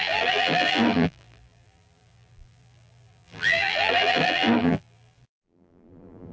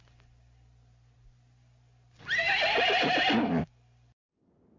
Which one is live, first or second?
second